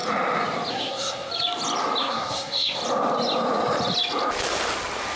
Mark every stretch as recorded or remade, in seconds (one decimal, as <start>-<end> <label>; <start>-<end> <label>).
0.0-0.7 recorded; 0.7-1.3 remade; 1.3-2.0 recorded; 2.0-2.8 remade; 2.8-5.2 recorded